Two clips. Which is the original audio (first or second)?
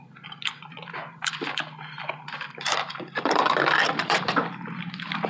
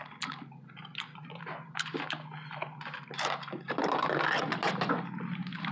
second